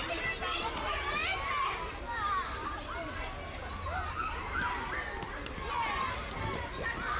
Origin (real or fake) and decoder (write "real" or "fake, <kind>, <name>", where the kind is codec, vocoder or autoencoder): real